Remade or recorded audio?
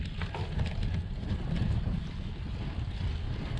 recorded